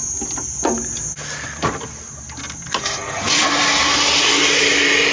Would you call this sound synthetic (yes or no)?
no